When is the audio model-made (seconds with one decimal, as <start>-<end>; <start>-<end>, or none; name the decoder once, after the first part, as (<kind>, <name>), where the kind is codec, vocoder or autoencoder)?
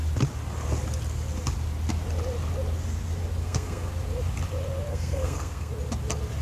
3.4-3.9 (codec, SNAC); 4.9-5.7